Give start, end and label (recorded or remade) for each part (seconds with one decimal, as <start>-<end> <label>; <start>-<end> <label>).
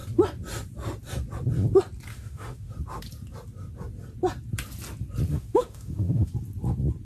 0.0-2.1 recorded; 2.1-2.7 remade; 2.7-5.3 recorded; 5.3-6.3 remade; 6.3-7.0 recorded